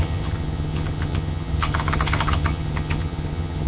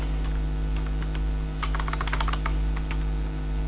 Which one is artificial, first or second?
first